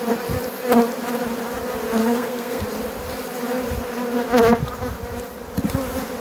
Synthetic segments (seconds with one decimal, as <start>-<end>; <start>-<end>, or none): 2.0-2.6

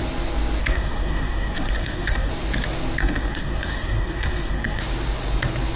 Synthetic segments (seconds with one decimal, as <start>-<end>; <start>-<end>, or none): 0.6-2.3; 3.0-4.8

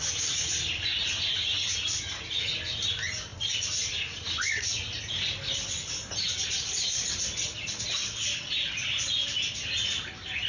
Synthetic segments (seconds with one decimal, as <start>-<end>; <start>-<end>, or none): none